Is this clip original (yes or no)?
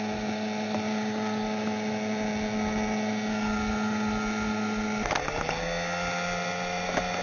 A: yes